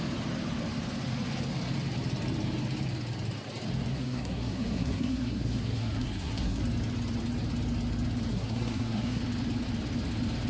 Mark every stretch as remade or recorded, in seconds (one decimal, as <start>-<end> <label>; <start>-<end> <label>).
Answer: 0.0-3.9 recorded; 3.9-6.6 remade; 6.6-8.3 recorded; 8.3-9.2 remade; 9.2-10.5 recorded